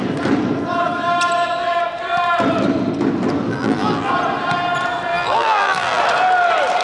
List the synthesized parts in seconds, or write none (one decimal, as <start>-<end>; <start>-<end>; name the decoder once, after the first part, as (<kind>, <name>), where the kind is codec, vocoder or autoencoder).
3.5-4.1 (vocoder, BigVGAN v2); 5.1-6.0

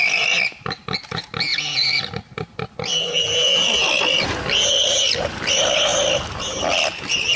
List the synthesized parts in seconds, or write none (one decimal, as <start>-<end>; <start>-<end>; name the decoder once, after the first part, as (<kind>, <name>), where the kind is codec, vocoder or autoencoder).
1.5-5.5 (vocoder, BigVGAN v2)